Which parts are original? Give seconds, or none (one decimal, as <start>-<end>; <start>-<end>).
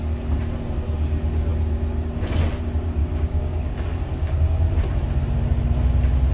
0.0-3.0; 4.7-6.3